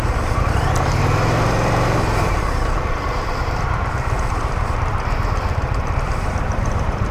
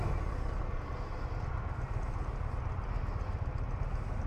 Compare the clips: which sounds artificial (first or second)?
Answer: first